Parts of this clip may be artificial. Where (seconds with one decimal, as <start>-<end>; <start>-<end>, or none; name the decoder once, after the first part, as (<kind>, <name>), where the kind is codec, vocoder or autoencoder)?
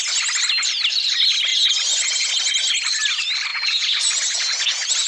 1.5-2.3 (vocoder, Vocos); 3.5-5.1